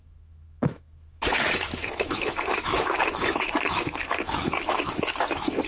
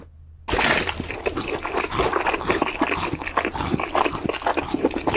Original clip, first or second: second